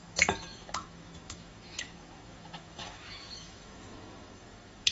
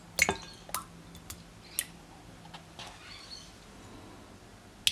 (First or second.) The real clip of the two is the second